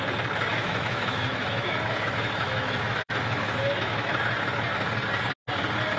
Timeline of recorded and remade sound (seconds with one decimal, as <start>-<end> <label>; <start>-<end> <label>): 0.0-0.5 recorded; 0.5-4.1 remade; 4.1-6.0 recorded